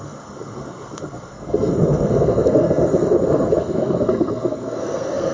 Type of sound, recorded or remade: remade